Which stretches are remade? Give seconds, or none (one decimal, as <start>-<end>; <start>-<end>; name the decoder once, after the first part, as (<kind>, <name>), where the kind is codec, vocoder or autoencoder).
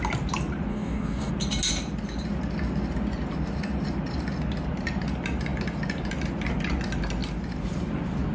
0.7-1.3 (codec, DAC)